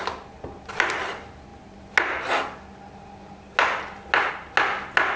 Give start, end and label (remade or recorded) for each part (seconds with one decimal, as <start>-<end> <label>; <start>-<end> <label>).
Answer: 0.0-5.2 recorded